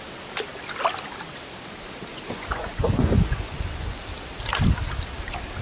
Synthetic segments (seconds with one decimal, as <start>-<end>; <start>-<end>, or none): 2.1-4.0